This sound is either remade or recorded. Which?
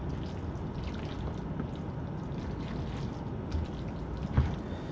recorded